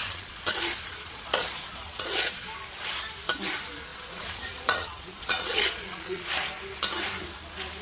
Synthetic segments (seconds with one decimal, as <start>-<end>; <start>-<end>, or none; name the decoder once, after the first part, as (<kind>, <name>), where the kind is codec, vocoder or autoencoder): 0.0-2.5 (vocoder, Vocos); 3.9-6.3